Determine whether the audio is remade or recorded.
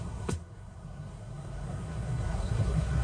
remade